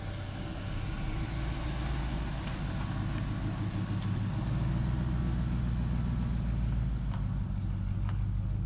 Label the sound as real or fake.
real